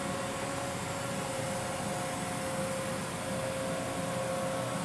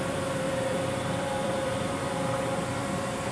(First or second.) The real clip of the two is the first